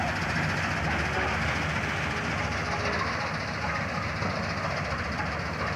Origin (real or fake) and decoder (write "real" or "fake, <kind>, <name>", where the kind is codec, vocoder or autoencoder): real